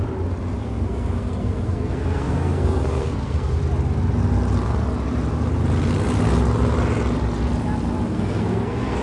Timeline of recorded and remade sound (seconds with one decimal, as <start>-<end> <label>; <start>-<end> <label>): 0.0-0.6 recorded; 0.6-3.6 remade; 3.6-8.1 recorded; 8.1-9.0 remade